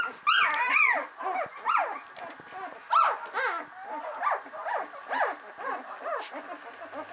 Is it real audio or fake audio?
real